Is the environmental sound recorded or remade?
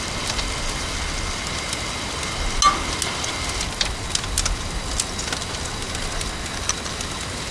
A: recorded